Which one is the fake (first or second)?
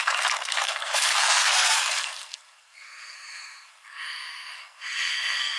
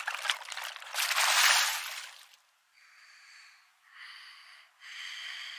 first